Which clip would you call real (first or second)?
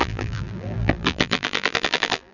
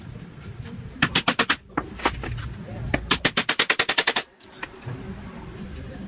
second